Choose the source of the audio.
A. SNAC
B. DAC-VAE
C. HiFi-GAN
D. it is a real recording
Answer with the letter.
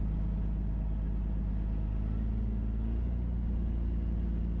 D